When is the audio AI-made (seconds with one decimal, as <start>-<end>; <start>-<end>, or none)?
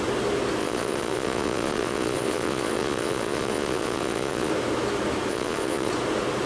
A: 0.6-4.5; 5.3-5.9